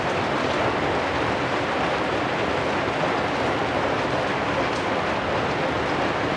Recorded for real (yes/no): yes